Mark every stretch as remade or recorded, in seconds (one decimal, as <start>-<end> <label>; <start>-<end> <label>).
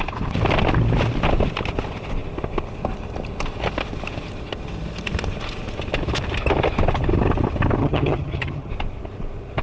0.0-7.8 recorded; 7.8-8.7 remade; 8.7-9.6 recorded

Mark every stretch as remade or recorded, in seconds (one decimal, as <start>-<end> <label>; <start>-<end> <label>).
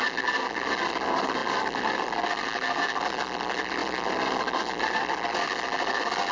0.0-6.3 recorded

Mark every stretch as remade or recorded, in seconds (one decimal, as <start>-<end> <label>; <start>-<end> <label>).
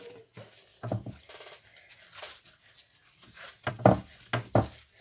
0.0-5.0 recorded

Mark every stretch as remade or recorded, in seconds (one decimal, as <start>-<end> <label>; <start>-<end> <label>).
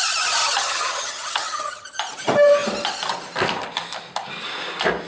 0.0-0.4 recorded; 0.4-2.0 remade; 2.0-5.1 recorded